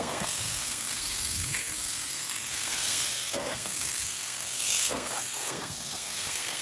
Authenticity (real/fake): fake